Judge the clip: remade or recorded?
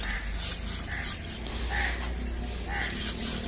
recorded